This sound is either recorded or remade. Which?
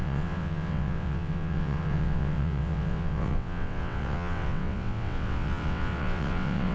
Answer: remade